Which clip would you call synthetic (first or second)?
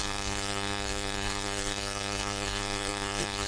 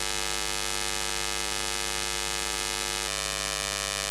first